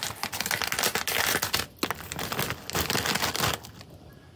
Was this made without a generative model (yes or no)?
yes